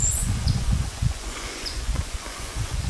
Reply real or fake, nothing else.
fake